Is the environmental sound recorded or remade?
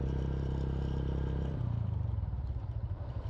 remade